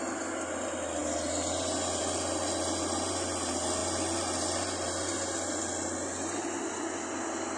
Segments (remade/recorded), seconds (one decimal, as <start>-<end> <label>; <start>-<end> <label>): 0.0-7.6 recorded